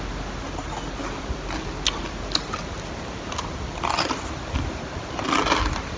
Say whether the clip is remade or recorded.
recorded